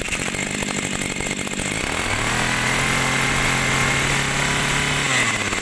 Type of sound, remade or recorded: recorded